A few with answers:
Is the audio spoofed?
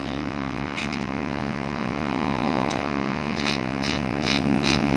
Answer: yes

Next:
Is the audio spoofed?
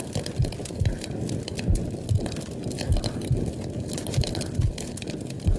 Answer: no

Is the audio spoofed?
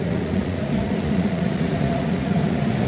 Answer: yes